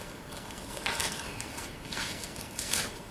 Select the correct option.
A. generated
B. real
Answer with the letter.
A